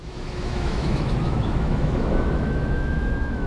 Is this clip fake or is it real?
fake